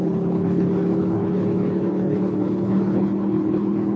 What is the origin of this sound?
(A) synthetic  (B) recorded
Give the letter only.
A